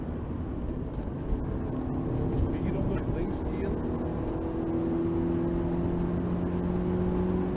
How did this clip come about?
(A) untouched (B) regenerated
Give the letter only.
A